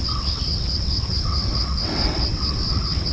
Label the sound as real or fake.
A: fake